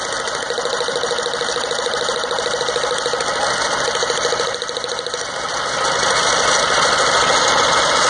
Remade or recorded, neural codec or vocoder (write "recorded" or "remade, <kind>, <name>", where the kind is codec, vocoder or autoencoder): recorded